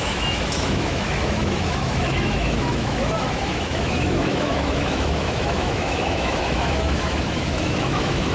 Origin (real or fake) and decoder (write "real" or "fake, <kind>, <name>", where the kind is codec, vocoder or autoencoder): fake, autoencoder, DAC-VAE